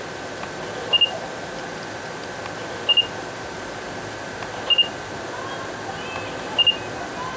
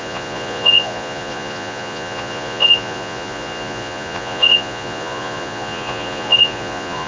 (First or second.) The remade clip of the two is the second